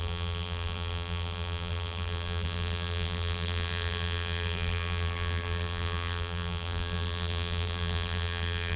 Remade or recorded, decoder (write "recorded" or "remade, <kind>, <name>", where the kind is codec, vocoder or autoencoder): remade, vocoder, BigVGAN v2